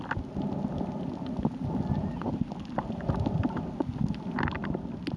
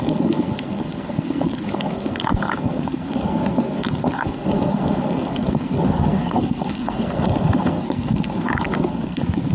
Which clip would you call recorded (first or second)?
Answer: first